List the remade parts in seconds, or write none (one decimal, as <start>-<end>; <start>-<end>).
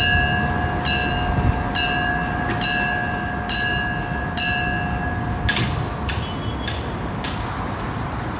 none